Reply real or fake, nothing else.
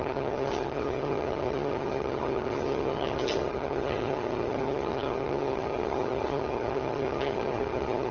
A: fake